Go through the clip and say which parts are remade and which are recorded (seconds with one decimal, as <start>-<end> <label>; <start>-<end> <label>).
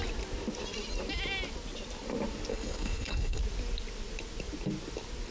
0.0-2.5 recorded; 2.5-3.4 remade; 3.4-5.3 recorded